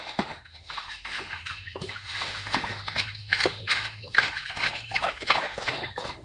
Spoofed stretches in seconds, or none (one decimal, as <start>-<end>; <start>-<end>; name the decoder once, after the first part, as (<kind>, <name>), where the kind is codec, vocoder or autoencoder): 0.0-6.2 (autoencoder, DAC-VAE)